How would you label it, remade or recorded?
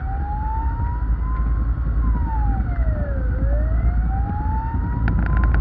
recorded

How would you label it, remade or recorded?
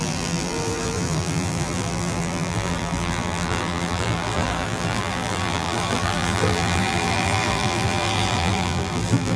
remade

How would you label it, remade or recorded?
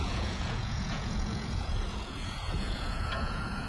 remade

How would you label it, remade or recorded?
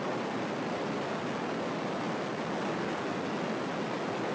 recorded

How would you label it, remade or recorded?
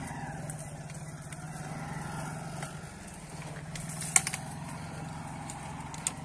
recorded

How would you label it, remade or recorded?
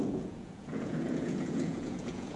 remade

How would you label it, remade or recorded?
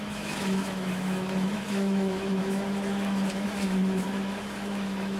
remade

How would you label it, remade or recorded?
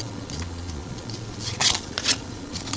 remade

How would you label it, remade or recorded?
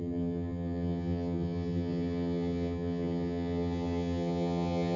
remade